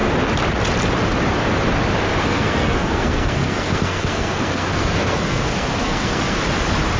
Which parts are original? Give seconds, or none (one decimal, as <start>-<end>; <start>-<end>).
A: 0.0-2.2; 6.4-7.0